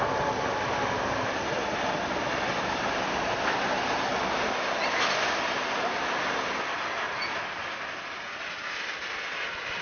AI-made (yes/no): no